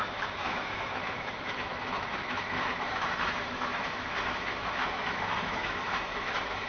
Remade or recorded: remade